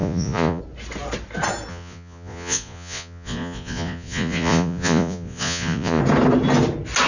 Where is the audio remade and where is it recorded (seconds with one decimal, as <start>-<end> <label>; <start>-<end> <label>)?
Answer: 0.0-0.6 remade; 0.6-1.7 recorded; 1.7-6.0 remade; 6.0-7.1 recorded